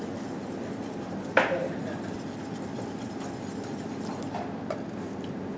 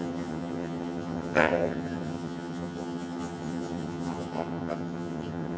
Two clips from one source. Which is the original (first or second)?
first